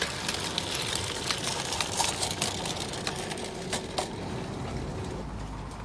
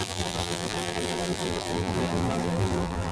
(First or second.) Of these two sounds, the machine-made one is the second